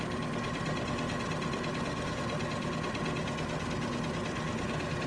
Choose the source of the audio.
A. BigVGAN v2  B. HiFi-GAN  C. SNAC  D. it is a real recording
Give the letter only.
D